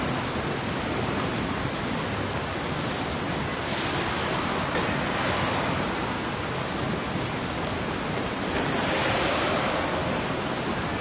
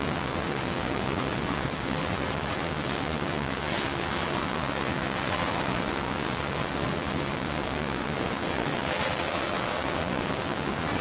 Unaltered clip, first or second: first